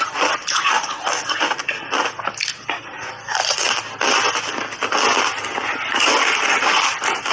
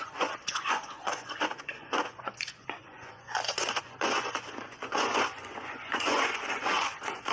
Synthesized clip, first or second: second